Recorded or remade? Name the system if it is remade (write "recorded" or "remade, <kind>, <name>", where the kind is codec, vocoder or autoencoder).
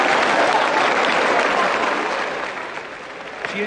recorded